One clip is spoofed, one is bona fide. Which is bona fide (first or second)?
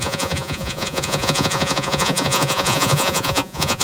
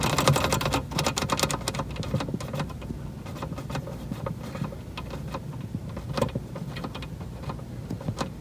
second